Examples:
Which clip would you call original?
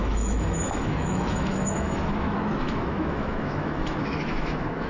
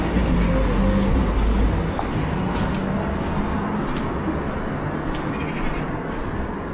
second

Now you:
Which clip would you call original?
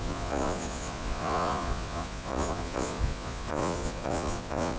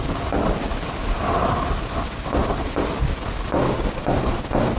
second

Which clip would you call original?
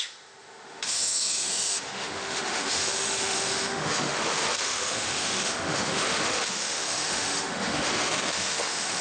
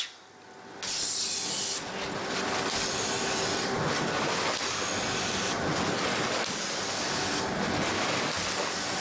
second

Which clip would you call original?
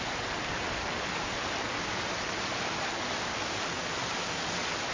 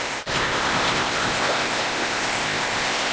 first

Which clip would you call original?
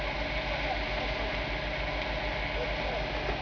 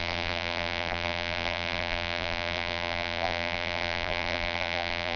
first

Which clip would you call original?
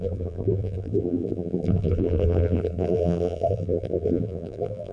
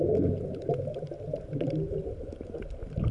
second